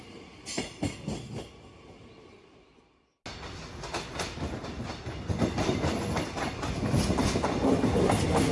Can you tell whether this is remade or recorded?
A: recorded